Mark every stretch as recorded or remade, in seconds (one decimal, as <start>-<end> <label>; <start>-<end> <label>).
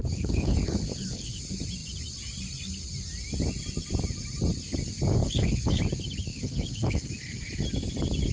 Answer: 0.0-1.4 remade; 1.4-5.2 recorded; 5.2-5.8 remade; 5.8-6.3 recorded; 6.3-7.1 remade; 7.1-8.3 recorded